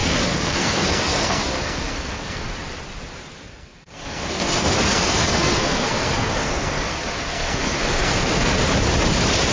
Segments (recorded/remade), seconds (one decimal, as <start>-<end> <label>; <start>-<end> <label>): 0.0-2.5 remade; 2.5-3.5 recorded; 3.5-8.6 remade; 8.6-9.5 recorded